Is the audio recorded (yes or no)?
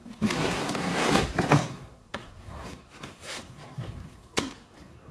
no